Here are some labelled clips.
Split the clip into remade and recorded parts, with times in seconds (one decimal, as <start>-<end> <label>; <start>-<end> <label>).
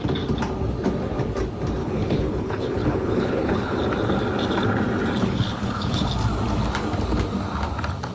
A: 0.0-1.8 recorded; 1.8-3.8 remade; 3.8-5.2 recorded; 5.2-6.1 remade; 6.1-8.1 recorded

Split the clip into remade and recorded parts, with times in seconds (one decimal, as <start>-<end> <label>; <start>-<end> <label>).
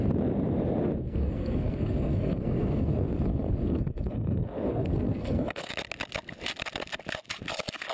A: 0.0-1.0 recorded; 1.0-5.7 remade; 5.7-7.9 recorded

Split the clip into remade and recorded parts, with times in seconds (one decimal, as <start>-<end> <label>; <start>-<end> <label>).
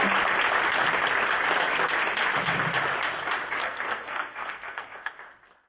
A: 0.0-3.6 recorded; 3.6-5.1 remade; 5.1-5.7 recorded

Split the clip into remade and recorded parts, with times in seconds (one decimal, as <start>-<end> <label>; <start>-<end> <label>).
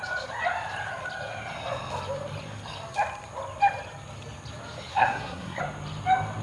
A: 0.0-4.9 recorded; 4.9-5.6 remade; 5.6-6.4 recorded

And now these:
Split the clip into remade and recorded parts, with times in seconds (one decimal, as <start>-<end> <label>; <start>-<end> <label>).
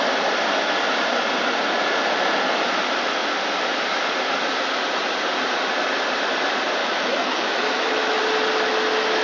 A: 0.0-6.8 recorded; 6.8-8.2 remade; 8.2-9.2 recorded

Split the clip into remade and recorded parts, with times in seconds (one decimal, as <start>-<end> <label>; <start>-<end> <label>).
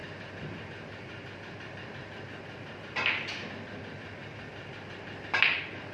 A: 0.0-5.9 recorded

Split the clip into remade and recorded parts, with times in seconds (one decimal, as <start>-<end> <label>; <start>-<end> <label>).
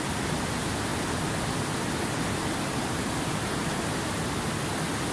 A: 0.0-5.1 recorded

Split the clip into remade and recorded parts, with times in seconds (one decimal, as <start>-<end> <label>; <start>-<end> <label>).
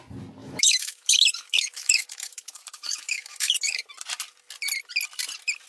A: 0.0-0.4 recorded; 0.4-3.8 remade; 3.8-5.7 recorded